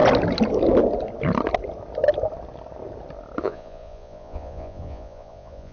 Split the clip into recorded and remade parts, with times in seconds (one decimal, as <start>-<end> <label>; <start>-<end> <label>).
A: 0.0-3.4 recorded; 3.4-5.7 remade